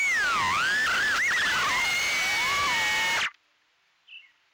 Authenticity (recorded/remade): recorded